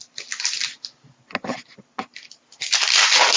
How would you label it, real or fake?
real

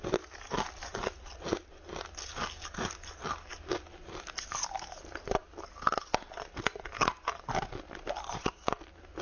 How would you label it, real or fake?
real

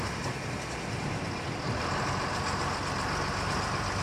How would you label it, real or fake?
real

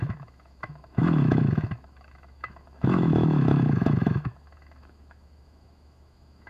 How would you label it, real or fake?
fake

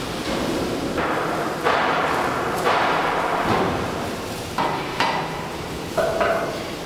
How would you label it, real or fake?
fake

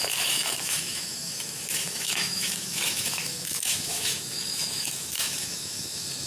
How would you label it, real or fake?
fake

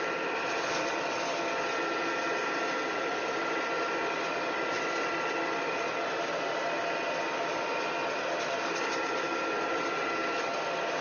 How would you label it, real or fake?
real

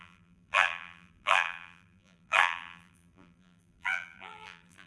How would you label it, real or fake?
fake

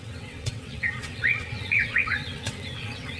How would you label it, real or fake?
fake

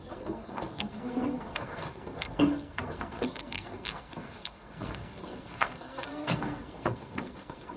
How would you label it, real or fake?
fake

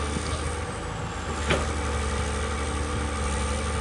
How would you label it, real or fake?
real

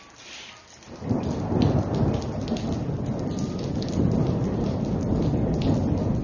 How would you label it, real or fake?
real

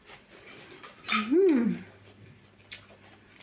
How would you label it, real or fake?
real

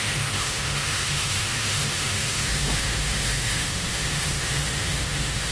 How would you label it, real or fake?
fake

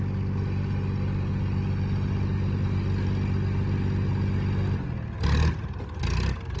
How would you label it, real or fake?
real